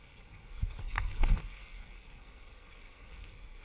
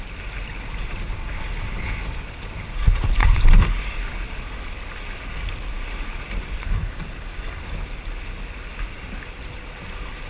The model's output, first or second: first